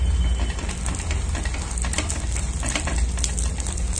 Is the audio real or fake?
real